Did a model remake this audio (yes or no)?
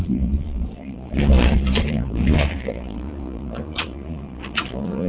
yes